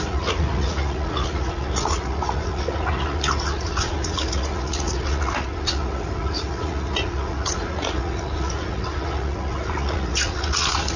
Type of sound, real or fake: fake